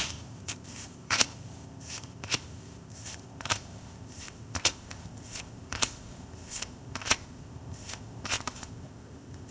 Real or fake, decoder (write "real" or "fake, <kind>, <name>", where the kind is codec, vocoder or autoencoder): fake, codec, ZipCodec